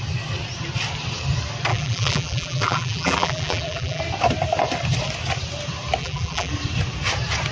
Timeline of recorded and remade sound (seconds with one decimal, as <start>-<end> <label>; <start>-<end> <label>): 0.0-1.7 recorded; 1.7-4.0 remade; 4.0-6.0 recorded; 6.0-6.5 remade; 6.5-7.5 recorded